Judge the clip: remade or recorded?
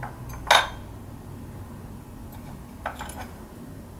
recorded